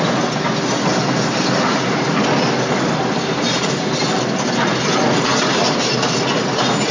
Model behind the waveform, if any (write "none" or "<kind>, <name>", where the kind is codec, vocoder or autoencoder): none